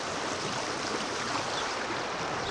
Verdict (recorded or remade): recorded